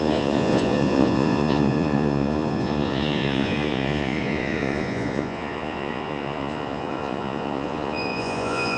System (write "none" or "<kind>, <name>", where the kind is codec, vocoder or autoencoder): vocoder, Vocos